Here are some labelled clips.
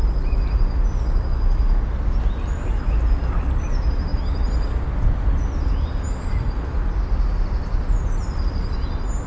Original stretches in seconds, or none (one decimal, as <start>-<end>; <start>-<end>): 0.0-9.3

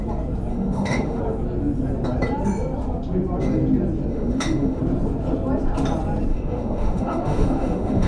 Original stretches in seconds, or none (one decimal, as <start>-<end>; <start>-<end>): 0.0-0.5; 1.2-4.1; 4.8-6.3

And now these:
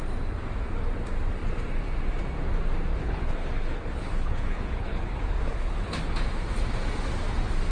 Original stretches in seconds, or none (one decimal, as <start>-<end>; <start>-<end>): 0.0-2.9; 6.0-7.7

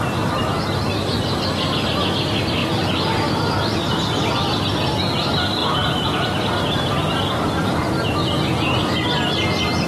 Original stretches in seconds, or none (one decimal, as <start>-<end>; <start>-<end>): 0.0-2.6; 3.3-5.6; 6.1-9.9

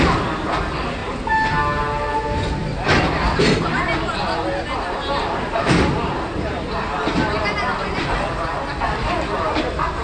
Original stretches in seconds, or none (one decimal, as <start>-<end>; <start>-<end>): 0.0-10.0